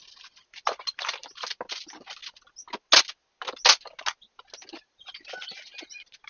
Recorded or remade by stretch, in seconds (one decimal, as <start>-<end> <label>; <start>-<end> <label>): 0.0-6.3 recorded